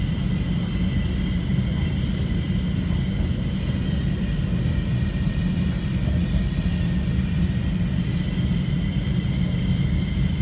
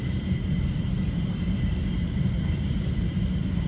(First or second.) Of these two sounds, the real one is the first